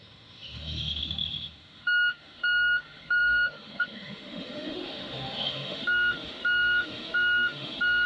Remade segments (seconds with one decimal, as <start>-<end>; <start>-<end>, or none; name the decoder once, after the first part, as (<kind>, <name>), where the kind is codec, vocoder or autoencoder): 0.0-8.1 (autoencoder, DAC-VAE)